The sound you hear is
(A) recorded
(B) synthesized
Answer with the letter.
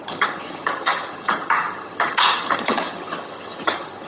B